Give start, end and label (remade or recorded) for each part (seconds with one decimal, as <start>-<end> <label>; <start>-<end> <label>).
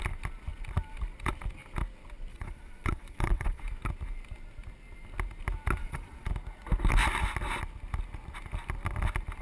0.0-2.3 recorded; 2.3-3.6 remade; 3.6-5.8 recorded; 5.8-6.3 remade; 6.3-9.4 recorded